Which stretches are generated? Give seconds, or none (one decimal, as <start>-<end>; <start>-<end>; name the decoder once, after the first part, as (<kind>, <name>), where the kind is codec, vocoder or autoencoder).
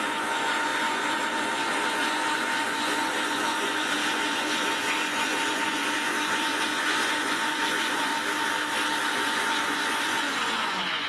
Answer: 0.0-8.1 (vocoder, Vocos); 9.1-11.1